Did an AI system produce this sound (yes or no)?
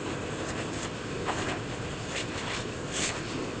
yes